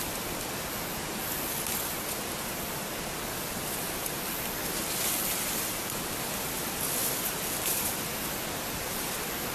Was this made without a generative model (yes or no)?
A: yes